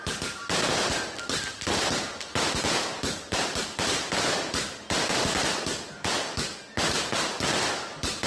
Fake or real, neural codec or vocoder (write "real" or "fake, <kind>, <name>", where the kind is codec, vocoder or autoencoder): real